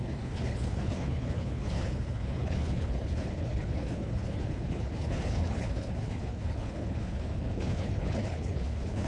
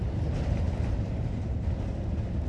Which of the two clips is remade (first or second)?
first